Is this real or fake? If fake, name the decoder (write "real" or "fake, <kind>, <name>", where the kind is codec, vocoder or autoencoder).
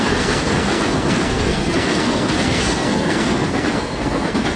fake, codec, SNAC